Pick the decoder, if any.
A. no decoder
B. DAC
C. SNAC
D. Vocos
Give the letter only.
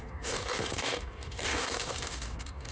B